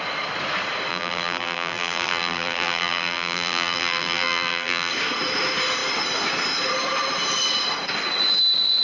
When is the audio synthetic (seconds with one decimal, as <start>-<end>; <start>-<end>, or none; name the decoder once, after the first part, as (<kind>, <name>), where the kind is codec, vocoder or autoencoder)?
0.9-4.9 (vocoder, BigVGAN v2)